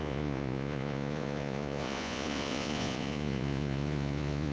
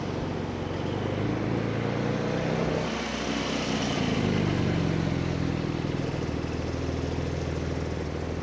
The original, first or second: second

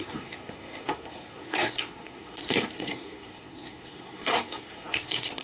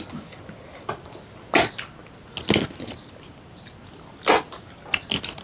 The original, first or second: second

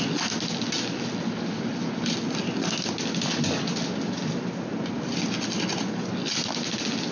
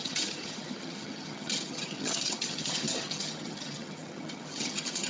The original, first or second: first